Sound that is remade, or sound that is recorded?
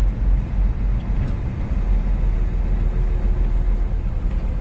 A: recorded